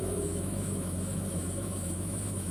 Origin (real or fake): fake